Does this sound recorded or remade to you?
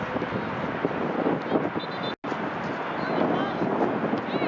recorded